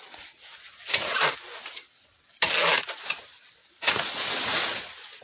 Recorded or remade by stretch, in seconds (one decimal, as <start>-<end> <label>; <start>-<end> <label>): 0.0-1.2 remade; 1.2-3.6 recorded; 3.6-5.2 remade